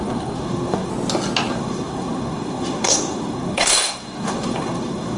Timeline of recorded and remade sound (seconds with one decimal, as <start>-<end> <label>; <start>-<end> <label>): 0.0-0.9 remade; 0.9-1.5 recorded; 1.5-5.2 remade